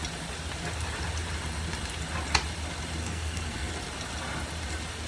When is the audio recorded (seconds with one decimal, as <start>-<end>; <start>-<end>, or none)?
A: 0.0-3.0; 3.7-5.1